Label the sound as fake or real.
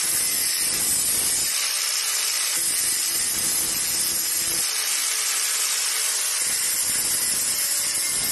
real